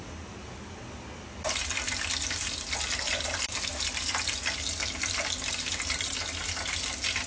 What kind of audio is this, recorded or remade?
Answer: recorded